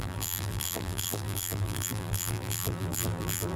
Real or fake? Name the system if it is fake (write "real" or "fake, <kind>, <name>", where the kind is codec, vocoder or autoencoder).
fake, vocoder, BigVGAN v2